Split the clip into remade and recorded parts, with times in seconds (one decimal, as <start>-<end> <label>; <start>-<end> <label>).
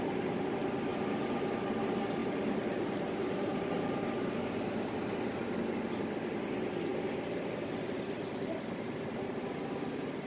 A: 0.0-0.9 recorded; 0.9-1.5 remade; 1.5-2.2 recorded; 2.2-4.4 remade; 4.4-10.3 recorded